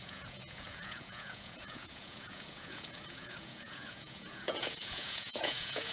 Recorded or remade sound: remade